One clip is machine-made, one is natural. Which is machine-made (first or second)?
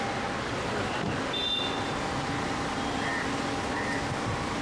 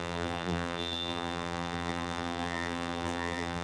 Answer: second